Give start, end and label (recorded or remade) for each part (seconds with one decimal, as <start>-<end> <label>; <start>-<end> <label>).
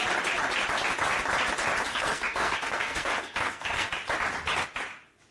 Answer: 0.0-1.9 recorded; 1.9-3.9 remade; 3.9-5.3 recorded